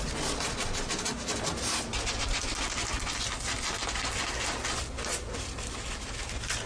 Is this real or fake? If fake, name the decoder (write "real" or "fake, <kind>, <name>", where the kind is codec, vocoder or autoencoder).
real